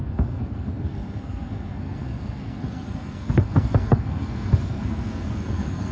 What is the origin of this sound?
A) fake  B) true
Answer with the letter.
A